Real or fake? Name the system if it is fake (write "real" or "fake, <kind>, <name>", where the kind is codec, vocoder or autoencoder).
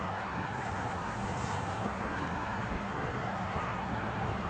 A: fake, codec, SNAC